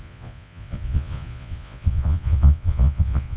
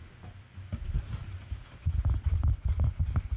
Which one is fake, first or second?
first